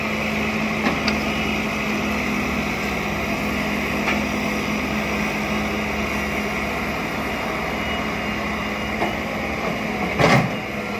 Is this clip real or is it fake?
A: real